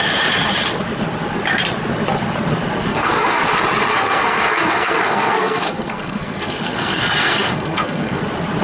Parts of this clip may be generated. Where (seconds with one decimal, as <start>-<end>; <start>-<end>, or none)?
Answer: 2.9-3.4; 3.9-8.2